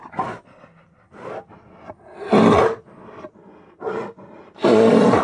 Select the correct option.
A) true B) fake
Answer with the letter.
A